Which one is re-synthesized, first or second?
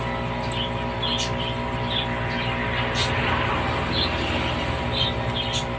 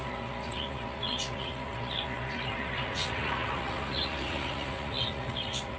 second